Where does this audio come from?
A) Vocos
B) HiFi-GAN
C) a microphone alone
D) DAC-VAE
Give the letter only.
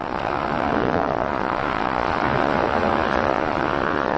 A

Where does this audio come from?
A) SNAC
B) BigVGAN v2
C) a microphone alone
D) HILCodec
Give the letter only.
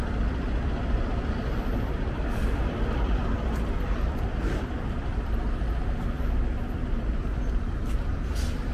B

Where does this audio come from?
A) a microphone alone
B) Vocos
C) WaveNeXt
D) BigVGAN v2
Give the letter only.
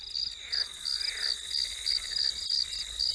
A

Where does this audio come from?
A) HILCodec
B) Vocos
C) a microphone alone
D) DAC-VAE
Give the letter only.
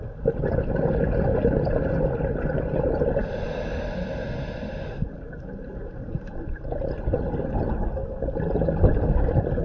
C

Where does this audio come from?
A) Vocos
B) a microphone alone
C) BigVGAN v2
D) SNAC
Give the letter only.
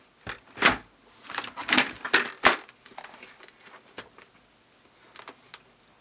B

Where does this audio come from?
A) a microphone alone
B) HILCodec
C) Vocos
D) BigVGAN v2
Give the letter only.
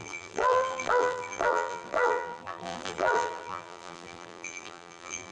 D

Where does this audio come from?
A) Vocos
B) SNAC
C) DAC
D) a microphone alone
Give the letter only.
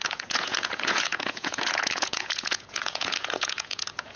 A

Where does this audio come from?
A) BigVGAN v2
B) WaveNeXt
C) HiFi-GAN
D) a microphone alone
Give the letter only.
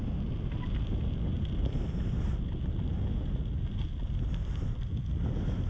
D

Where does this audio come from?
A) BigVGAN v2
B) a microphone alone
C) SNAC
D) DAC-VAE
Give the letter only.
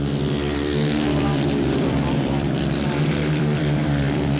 A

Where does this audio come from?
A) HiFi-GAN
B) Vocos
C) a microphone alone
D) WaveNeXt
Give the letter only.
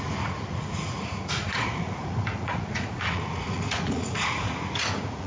B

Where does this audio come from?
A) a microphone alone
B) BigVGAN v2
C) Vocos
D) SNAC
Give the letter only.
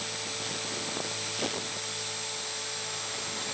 A